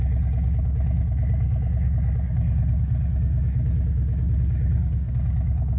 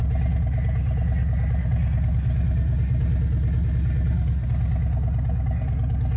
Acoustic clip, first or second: second